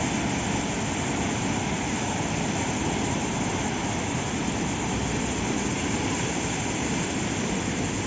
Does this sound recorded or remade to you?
recorded